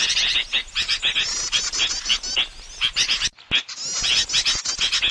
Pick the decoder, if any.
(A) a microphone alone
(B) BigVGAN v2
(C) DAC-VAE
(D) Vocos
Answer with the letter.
A